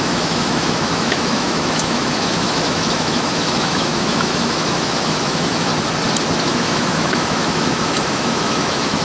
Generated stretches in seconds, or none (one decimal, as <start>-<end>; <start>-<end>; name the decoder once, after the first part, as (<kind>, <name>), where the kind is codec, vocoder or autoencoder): 0.0-5.7 (autoencoder, DAC-VAE); 6.4-9.0